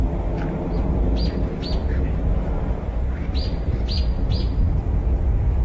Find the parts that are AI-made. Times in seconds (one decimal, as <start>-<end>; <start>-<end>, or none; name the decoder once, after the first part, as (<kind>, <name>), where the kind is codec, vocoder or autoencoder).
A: none